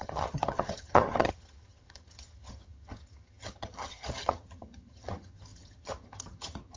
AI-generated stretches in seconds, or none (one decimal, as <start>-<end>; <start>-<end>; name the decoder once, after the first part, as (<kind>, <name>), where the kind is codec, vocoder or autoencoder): 0.0-6.8 (vocoder, HiFi-GAN)

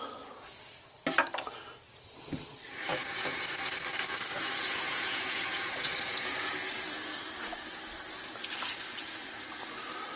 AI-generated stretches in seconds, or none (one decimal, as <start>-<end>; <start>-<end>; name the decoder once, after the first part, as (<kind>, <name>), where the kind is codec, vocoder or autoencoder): 2.9-3.4 (vocoder, Vocos); 4.3-6.5

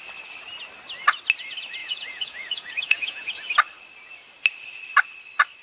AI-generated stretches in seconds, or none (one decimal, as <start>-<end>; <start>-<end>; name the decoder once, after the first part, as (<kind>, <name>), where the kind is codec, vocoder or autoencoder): 1.8-3.3 (vocoder, Vocos)

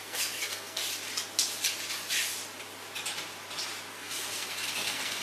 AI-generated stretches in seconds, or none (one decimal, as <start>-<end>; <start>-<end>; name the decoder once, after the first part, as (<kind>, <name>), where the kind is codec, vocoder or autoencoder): 0.0-0.8 (codec, SNAC); 3.9-5.2

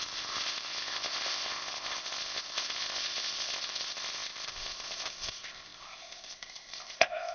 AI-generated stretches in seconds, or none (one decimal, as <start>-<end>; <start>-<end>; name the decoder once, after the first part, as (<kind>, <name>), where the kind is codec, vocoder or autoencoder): 0.0-7.3 (codec, ZipCodec)

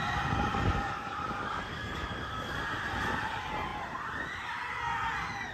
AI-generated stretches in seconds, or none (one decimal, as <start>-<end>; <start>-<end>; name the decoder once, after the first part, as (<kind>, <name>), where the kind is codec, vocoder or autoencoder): 0.5-2.6 (codec, DAC)

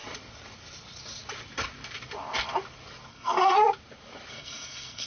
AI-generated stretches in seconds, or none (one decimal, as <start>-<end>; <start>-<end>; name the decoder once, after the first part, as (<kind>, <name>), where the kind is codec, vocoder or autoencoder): 3.1-3.6 (codec, SNAC); 4.3-5.1